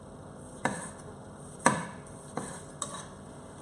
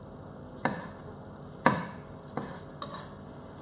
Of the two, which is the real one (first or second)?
second